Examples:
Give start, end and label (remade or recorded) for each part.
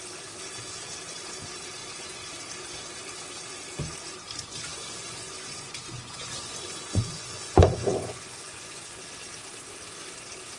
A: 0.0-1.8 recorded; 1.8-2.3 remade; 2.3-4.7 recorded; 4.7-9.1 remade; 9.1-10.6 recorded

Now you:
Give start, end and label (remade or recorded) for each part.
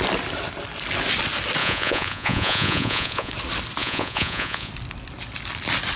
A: 0.0-1.6 recorded; 1.6-3.3 remade; 3.3-3.8 recorded; 3.8-4.7 remade; 4.7-6.0 recorded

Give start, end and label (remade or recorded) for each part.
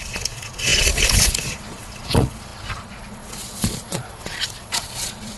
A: 0.0-5.4 remade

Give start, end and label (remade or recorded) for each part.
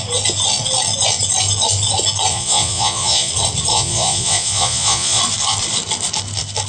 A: 0.0-2.3 recorded; 2.3-3.3 remade; 3.3-3.7 recorded; 3.7-5.2 remade; 5.2-6.7 recorded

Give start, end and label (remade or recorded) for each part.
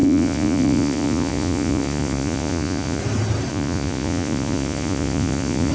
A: 0.0-3.0 remade; 3.0-3.5 recorded; 3.5-5.7 remade